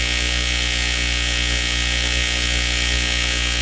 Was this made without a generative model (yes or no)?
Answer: yes